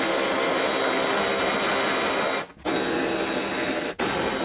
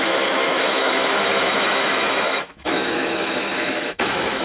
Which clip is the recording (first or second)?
first